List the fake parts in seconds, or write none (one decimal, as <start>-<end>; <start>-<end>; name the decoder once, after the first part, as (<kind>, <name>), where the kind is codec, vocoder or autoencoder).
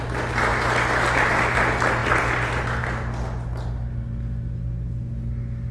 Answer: none